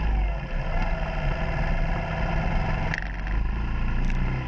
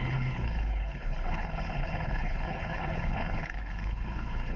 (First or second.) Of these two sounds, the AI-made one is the second